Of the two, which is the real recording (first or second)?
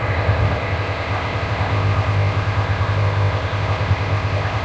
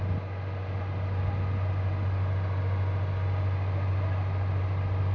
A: second